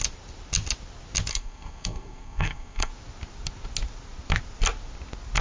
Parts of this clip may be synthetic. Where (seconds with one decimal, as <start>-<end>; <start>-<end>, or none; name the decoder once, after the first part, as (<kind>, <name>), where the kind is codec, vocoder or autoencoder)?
1.3-2.9 (codec, SNAC)